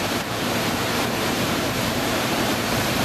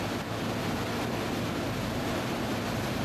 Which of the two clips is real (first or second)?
second